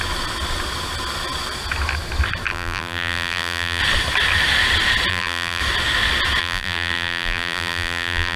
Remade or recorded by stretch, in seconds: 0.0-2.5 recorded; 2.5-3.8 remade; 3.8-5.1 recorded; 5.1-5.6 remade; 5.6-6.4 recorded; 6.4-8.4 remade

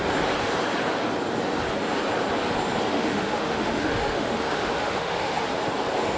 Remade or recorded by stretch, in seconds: 0.0-2.9 recorded; 2.9-5.4 remade; 5.4-6.2 recorded

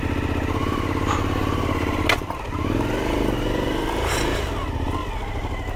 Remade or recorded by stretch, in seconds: 0.0-0.6 recorded; 0.6-4.1 remade; 4.1-5.8 recorded

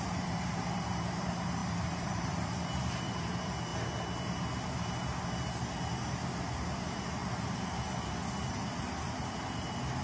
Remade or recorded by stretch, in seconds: 0.0-3.7 remade; 3.7-6.4 recorded; 6.4-7.2 remade; 7.2-9.0 recorded; 9.0-10.0 remade

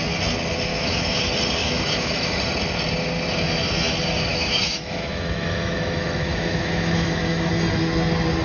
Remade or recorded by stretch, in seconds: 0.0-0.7 recorded; 0.7-1.2 remade; 1.2-1.6 recorded; 1.6-2.4 remade; 2.4-4.3 recorded; 4.3-7.5 remade; 7.5-8.4 recorded

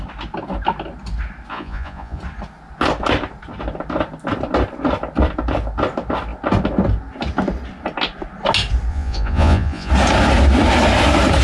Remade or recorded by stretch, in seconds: 0.0-1.5 recorded; 1.5-2.2 remade; 2.2-8.9 recorded; 8.9-9.9 remade; 9.9-11.4 recorded

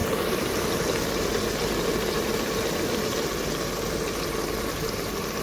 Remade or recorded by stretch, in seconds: 0.0-5.4 recorded

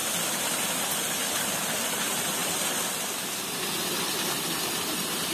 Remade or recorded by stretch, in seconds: 0.0-5.3 recorded